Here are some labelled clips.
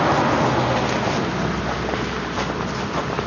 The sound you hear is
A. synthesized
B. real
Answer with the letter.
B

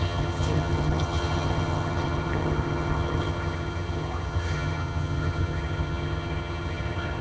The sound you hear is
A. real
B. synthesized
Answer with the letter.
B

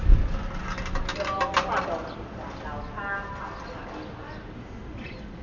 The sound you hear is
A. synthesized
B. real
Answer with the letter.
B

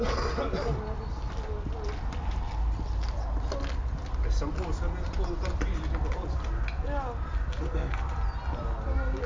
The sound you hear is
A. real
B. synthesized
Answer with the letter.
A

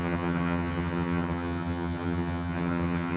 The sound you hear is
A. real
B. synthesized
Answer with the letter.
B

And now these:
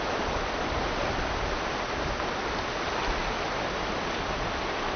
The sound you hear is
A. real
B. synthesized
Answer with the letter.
A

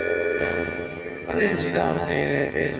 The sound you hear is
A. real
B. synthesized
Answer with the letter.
B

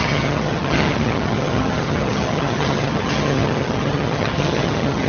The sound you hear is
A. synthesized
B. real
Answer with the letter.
A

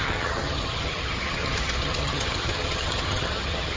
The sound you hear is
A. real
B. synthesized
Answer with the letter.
B